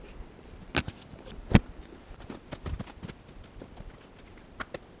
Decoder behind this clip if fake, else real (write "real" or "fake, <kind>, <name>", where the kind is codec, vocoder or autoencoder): real